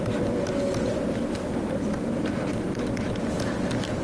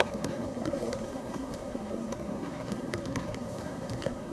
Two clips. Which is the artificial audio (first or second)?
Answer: second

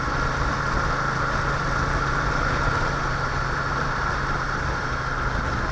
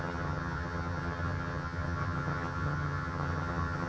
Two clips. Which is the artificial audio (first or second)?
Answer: second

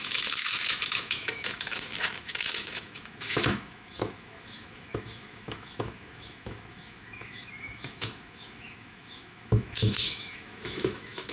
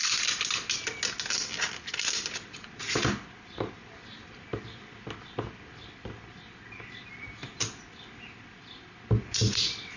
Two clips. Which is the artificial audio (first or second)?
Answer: first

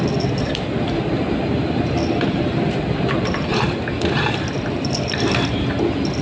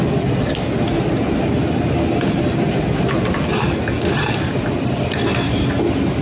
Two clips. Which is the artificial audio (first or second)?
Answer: first